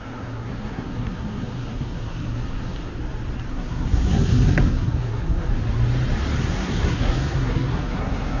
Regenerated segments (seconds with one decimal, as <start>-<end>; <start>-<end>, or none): 0.0-2.9; 3.5-5.5; 6.4-8.4